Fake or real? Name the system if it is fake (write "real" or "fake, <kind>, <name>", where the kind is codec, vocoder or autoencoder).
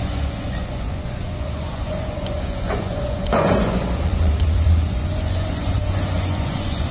fake, vocoder, Vocos